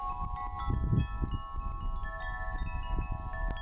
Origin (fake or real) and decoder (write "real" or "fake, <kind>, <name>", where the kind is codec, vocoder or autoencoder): real